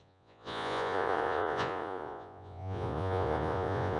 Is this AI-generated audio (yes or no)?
yes